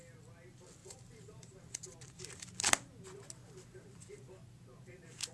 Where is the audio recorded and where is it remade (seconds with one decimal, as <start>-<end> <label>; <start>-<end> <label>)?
0.0-0.8 recorded; 0.8-1.6 remade; 1.6-5.3 recorded